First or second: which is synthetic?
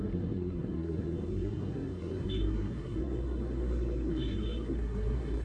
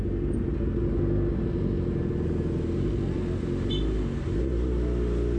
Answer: first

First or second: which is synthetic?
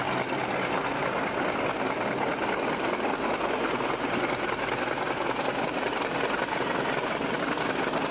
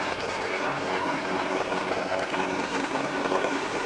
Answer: second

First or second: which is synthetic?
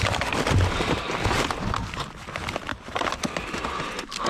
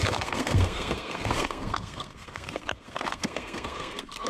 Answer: second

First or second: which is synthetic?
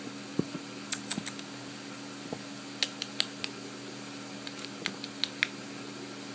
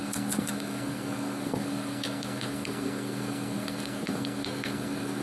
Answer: second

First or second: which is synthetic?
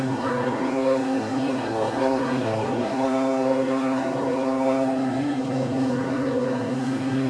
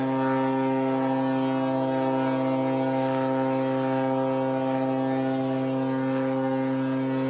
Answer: first